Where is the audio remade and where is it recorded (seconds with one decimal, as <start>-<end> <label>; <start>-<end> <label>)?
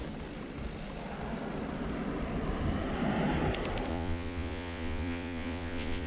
0.0-3.9 recorded; 3.9-6.1 remade